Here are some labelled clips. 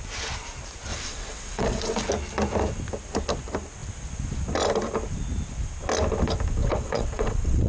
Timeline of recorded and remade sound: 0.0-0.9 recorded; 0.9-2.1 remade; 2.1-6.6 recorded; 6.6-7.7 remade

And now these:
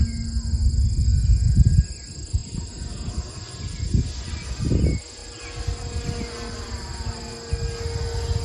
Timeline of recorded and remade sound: 0.0-2.4 recorded; 2.4-3.1 remade; 3.1-8.4 recorded

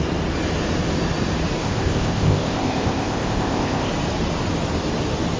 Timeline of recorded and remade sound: 0.0-1.6 recorded; 1.6-3.9 remade; 3.9-5.4 recorded